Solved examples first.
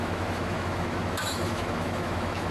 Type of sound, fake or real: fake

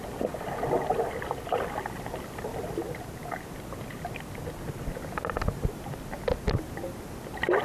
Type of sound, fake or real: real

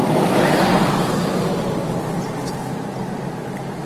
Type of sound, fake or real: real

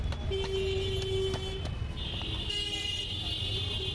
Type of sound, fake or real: real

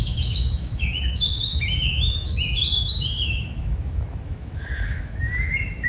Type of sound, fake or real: fake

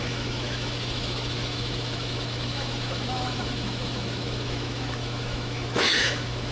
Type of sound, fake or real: fake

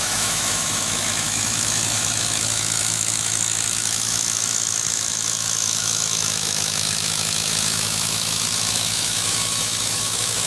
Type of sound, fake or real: fake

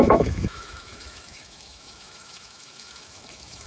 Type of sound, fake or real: fake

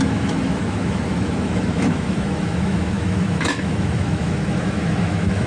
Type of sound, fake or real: fake